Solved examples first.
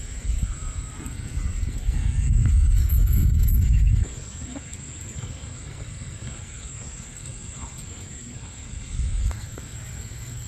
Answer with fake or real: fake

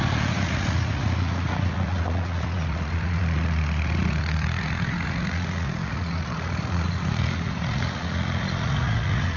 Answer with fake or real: fake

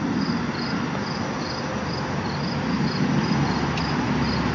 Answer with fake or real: real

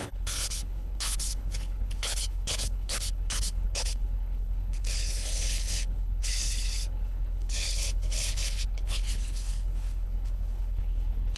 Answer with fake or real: fake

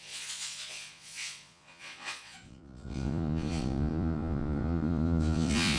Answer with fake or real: fake